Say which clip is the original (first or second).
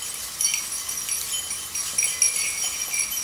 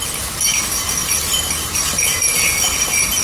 first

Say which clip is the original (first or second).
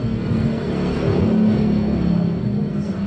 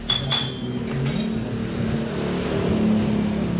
second